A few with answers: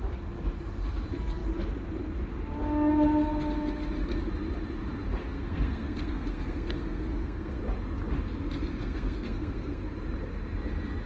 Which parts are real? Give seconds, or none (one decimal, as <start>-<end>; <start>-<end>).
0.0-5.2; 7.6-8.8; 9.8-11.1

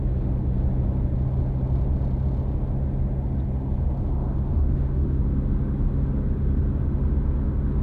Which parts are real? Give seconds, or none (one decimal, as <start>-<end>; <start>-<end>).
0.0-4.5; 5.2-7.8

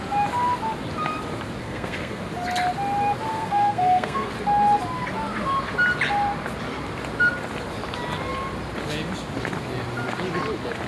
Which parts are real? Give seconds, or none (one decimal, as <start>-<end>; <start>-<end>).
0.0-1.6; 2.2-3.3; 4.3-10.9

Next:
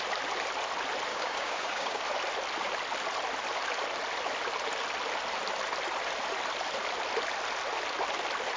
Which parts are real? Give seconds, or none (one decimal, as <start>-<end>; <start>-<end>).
0.0-1.1; 2.0-8.6

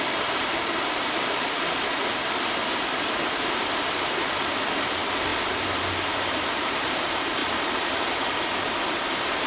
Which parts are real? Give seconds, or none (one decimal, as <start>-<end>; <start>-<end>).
1.6-3.9; 5.3-6.3

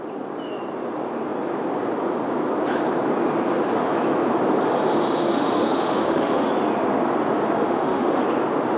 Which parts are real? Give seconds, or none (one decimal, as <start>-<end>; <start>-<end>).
0.0-5.3; 6.5-7.6; 8.2-8.8

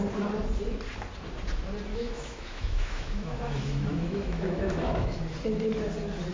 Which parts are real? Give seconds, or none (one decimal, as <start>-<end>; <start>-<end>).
0.0-1.9; 5.2-6.3